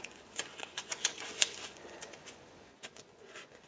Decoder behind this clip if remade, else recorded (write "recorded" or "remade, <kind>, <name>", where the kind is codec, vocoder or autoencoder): remade, vocoder, Vocos